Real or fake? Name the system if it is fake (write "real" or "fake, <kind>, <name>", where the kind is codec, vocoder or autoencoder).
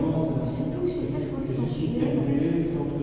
real